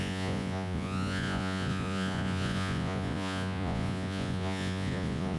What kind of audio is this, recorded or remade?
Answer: remade